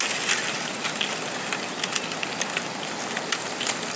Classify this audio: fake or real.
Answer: real